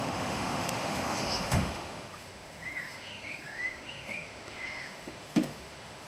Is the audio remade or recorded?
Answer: remade